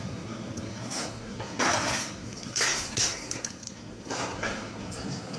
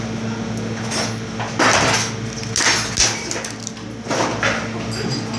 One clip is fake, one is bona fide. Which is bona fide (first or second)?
second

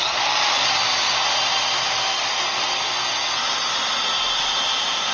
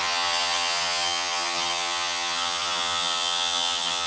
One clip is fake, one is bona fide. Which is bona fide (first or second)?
first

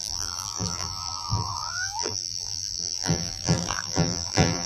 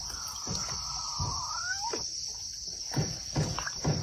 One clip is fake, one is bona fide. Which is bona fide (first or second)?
second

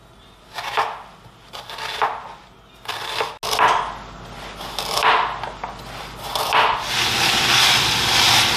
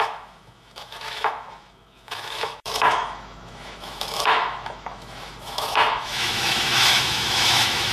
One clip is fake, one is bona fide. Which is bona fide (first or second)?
first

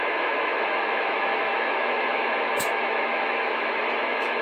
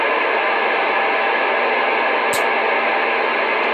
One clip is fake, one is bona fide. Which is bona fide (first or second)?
second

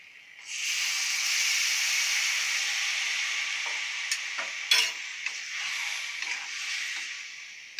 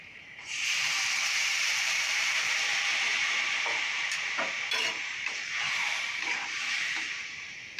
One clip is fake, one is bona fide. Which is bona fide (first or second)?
first